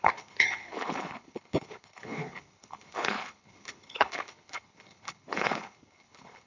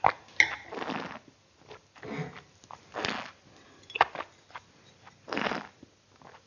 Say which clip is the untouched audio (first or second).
second